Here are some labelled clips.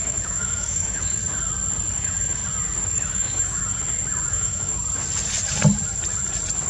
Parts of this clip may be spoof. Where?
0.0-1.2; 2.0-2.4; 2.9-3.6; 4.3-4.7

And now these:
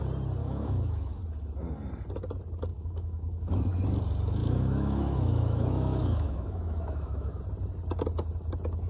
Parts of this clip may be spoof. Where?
0.4-1.2; 2.7-3.7; 4.4-7.4

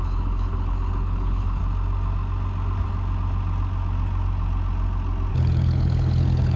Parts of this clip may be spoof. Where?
0.0-1.6; 5.3-6.6

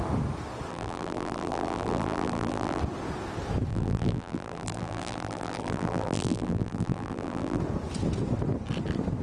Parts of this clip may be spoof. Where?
0.7-2.8; 3.7-7.6

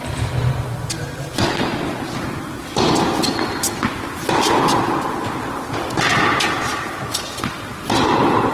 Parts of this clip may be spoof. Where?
none

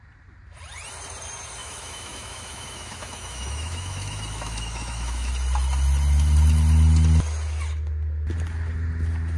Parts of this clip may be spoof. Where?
1.6-5.3

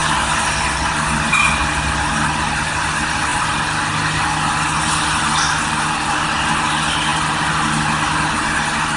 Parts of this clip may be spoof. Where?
3.3-3.9